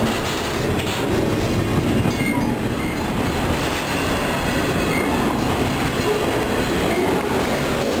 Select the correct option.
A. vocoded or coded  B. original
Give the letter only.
B